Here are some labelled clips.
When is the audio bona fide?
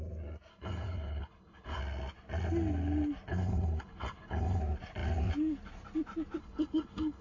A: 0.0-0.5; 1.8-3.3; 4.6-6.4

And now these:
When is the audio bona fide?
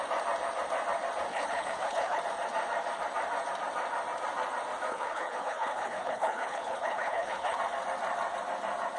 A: 0.0-1.3; 2.2-4.9; 7.6-9.0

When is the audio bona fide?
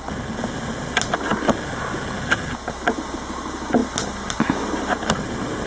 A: 0.0-5.7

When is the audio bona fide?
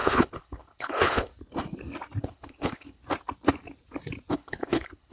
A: 1.3-2.2; 3.0-4.3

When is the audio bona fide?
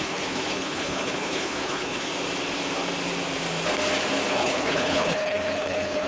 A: 2.1-4.3